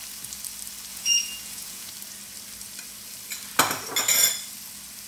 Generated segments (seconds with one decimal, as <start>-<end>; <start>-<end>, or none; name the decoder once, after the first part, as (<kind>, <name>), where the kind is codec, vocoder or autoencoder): 0.9-1.9 (vocoder, Vocos)